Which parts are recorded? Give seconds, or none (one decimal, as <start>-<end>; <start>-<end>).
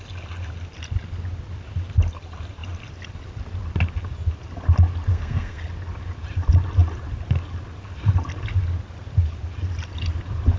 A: 0.0-5.1; 5.6-10.6